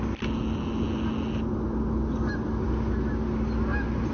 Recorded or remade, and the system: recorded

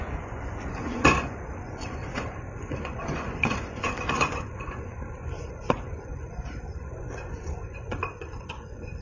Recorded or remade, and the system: remade, vocoder, Vocos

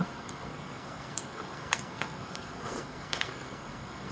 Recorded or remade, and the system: remade, codec, SNAC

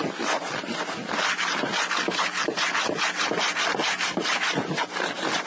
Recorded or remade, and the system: recorded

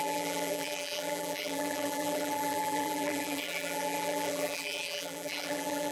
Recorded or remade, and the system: remade, vocoder, BigVGAN v2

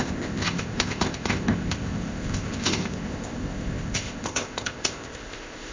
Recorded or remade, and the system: remade, codec, ZipCodec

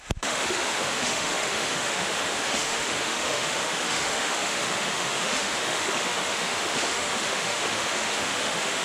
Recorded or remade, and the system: remade, autoencoder, DAC-VAE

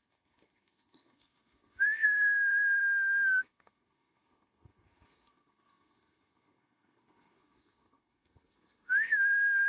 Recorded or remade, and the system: remade, codec, SNAC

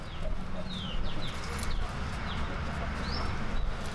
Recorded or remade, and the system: recorded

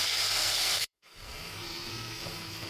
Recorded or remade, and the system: remade, codec, SNAC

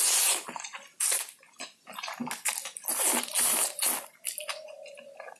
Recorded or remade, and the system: recorded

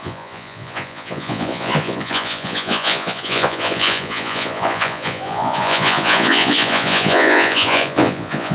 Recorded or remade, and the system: remade, vocoder, Vocos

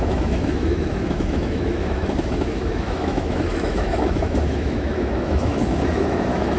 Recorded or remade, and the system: remade, autoencoder, DAC-VAE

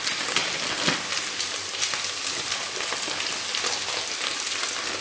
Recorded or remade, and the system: recorded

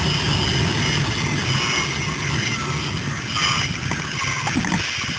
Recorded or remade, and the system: recorded